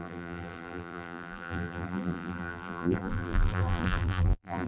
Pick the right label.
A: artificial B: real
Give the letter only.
A